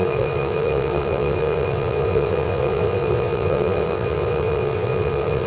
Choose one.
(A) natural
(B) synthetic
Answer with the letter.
B